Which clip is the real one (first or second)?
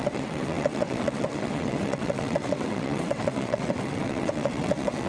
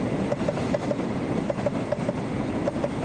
second